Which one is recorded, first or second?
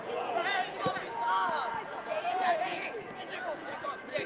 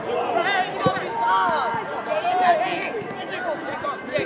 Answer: second